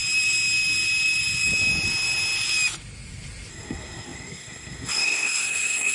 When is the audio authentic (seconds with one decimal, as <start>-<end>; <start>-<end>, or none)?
0.0-3.5